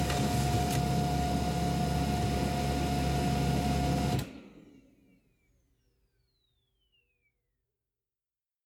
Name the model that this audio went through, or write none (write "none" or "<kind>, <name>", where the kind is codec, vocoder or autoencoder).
none